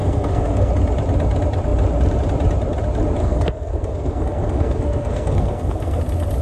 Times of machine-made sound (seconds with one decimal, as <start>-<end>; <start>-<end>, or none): 0.0-0.7; 3.2-6.0